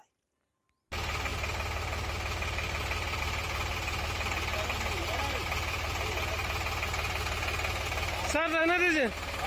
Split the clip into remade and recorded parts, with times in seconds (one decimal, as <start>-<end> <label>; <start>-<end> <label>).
0.0-9.5 recorded